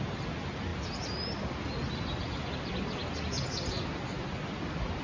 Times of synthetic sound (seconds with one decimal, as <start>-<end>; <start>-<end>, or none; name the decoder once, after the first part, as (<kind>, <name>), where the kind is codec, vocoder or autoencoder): none